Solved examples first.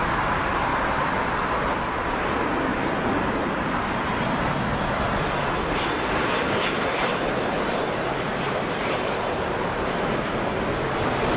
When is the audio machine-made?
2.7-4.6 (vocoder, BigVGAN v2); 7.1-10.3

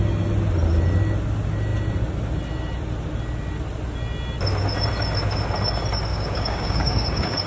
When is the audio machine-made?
6.1-7.5 (codec, DAC)

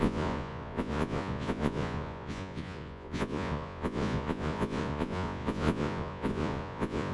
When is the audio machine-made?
0.0-7.1 (vocoder, Vocos)

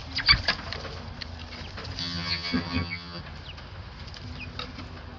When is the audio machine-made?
2.0-3.2 (vocoder, HiFi-GAN)

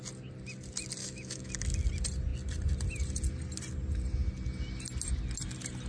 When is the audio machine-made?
1.0-1.5 (autoencoder, DAC-VAE)